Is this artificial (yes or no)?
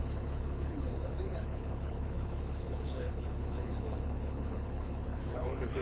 yes